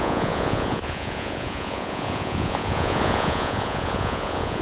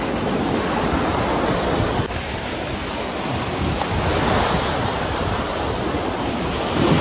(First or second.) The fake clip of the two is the first